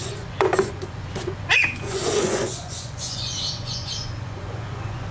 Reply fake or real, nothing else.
fake